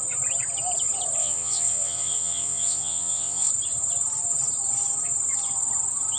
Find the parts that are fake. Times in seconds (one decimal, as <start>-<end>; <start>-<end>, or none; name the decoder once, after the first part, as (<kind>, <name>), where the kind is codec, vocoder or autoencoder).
1.2-3.5 (vocoder, WaveNeXt)